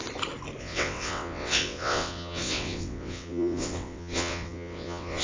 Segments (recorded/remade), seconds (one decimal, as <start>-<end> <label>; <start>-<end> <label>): 0.0-0.6 recorded; 0.6-5.2 remade